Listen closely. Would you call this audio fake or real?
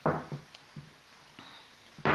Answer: real